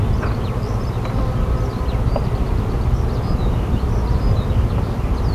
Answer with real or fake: real